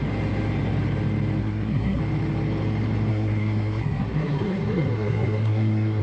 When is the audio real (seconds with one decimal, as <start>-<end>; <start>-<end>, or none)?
0.0-1.4; 2.0-3.1